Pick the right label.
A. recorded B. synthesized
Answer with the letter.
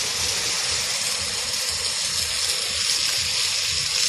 A